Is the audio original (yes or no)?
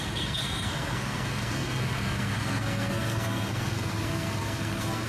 no